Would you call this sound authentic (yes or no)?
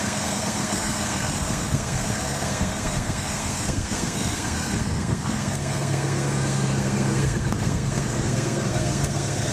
no